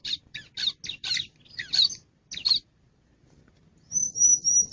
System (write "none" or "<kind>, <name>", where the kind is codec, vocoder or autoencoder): none